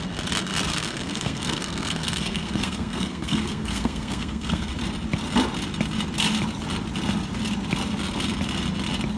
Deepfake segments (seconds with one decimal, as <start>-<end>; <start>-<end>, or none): 0.7-4.7